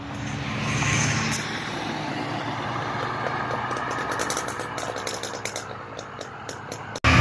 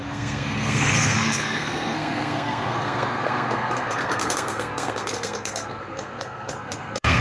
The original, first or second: first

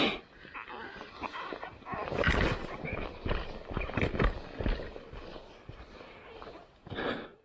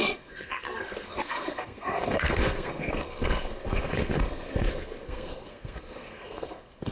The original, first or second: first